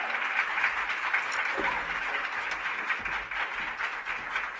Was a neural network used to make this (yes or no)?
no